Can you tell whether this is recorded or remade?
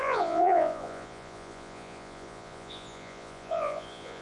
remade